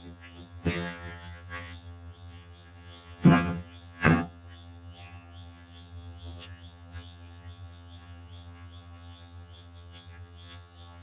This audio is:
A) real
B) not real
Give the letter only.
B